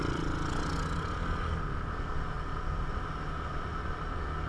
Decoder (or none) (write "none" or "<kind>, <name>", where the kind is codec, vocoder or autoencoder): none